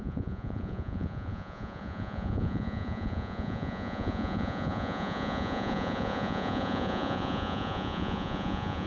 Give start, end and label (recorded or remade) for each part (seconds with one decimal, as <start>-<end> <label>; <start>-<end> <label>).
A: 0.0-8.9 remade